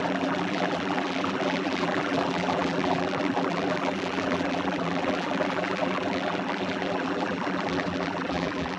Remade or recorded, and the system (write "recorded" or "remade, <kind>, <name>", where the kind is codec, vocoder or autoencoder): remade, vocoder, BigVGAN v2